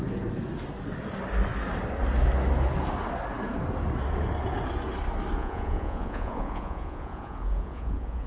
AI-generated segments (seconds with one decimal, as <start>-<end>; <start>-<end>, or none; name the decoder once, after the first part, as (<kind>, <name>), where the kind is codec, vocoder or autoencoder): 5.4-8.3 (vocoder, Vocos)